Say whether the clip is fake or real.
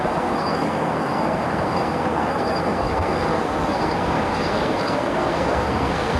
fake